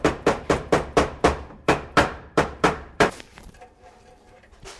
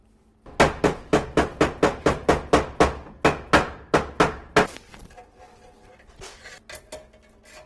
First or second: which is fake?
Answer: first